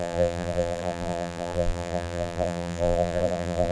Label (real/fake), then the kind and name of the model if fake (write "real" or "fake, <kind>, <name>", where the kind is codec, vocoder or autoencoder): fake, vocoder, BigVGAN v2